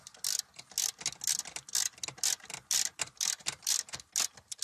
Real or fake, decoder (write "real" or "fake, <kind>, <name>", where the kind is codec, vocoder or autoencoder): real